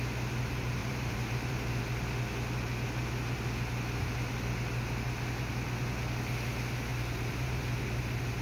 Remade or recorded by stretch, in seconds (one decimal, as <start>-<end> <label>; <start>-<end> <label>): 0.0-0.8 recorded; 0.8-1.8 remade; 1.8-6.9 recorded; 6.9-7.6 remade; 7.6-8.4 recorded